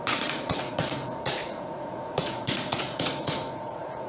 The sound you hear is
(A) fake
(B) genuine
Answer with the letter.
A